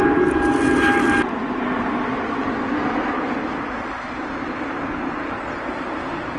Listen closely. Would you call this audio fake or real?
real